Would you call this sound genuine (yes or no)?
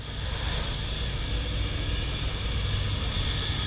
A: yes